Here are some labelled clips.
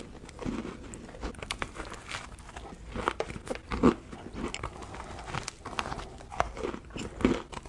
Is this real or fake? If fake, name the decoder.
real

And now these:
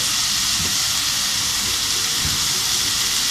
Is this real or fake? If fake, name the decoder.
real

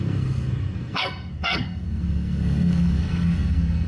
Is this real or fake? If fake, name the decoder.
fake, codec, SNAC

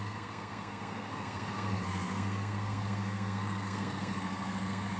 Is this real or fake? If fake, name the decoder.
fake, codec, SNAC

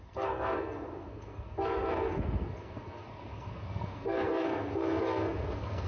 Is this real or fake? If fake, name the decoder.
fake, codec, SNAC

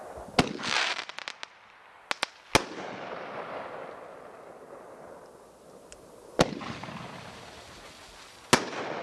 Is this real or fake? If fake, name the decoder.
real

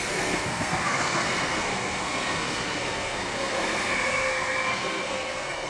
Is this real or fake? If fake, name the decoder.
fake, codec, SNAC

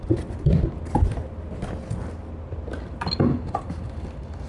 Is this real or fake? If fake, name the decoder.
real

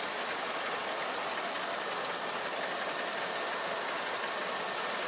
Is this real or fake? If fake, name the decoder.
real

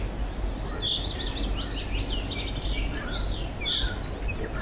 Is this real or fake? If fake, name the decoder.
real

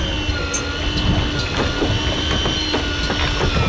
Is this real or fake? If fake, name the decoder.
real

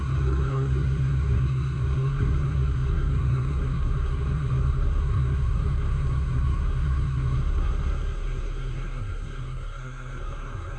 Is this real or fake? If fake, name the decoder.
fake, codec, SNAC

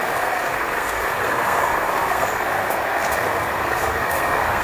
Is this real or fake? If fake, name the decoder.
fake, codec, SNAC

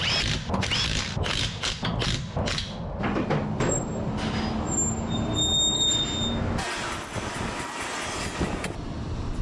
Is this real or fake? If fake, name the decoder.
real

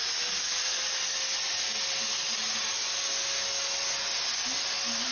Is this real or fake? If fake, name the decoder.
real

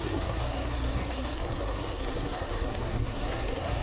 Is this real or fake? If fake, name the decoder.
fake, codec, SNAC